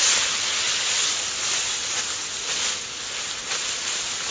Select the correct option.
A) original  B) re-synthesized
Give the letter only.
A